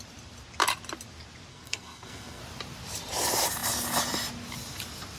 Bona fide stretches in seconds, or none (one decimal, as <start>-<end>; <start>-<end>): 0.0-1.5; 2.4-5.2